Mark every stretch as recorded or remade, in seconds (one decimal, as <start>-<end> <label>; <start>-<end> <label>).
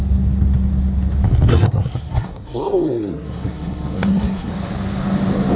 0.0-1.5 recorded; 1.5-4.5 remade; 4.5-5.6 recorded